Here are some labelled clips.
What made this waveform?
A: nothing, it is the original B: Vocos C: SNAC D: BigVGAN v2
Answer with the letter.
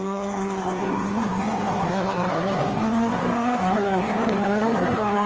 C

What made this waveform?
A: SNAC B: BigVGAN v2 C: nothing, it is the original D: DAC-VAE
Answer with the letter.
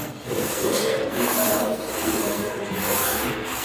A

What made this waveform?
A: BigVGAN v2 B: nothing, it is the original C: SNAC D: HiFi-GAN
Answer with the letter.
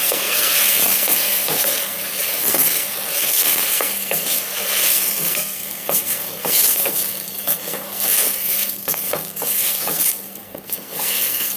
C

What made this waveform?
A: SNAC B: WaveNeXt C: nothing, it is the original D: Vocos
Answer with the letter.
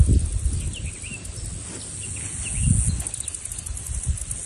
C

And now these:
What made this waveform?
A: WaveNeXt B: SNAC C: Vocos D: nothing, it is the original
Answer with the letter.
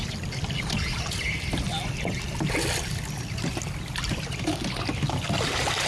D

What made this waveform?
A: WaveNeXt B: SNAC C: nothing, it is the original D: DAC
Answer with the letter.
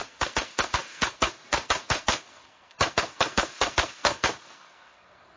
B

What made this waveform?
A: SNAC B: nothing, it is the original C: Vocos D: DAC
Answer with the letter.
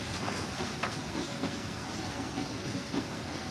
A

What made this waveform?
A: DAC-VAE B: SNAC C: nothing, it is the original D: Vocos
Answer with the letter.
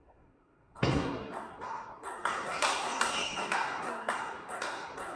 B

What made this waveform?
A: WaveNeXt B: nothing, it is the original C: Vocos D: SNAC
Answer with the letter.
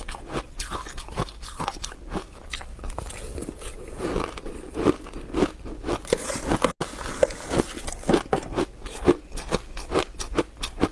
B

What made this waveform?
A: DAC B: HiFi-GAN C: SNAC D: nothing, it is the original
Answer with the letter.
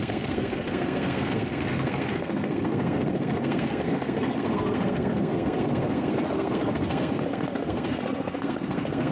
C